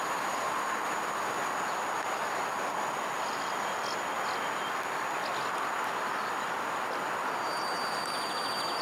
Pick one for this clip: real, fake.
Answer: real